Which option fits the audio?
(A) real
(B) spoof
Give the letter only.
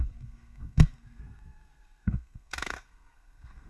B